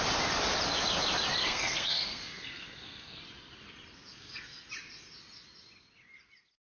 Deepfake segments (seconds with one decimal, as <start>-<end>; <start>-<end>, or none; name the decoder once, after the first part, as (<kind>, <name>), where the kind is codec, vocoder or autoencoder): 1.4-3.2 (codec, SNAC); 4.1-4.7